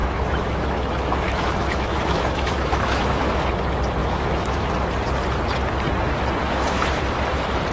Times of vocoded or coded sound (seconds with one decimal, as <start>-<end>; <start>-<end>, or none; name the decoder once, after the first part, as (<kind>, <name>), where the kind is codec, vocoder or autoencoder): 0.0-3.4 (autoencoder, DAC-VAE); 4.0-4.7; 6.4-7.0